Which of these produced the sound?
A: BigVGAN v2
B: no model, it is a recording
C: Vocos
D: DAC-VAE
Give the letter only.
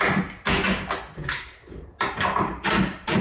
B